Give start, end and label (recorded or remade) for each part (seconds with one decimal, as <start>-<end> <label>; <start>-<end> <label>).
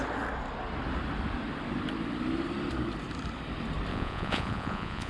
0.0-3.9 recorded; 3.9-5.1 remade